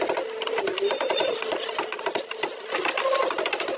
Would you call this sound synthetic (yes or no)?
no